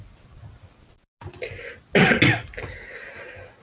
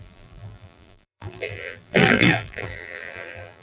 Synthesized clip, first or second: second